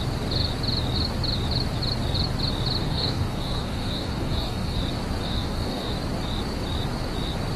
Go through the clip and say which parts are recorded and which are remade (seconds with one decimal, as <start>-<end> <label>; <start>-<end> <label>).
0.0-2.8 recorded; 2.8-4.8 remade; 4.8-5.2 recorded; 5.2-5.9 remade; 5.9-7.6 recorded